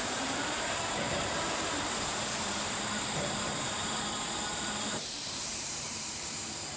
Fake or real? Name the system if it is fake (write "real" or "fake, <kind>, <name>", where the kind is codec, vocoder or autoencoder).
fake, vocoder, BigVGAN v2